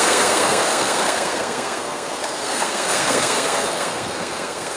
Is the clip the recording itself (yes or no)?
no